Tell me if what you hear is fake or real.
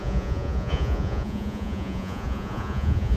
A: fake